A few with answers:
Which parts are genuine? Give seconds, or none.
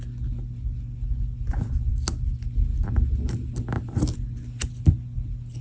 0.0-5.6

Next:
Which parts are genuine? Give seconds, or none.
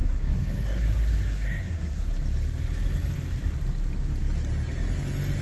2.1-5.4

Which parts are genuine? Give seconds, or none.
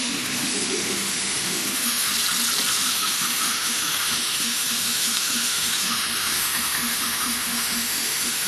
2.1-2.7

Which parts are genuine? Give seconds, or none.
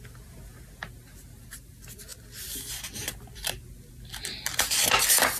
0.0-5.4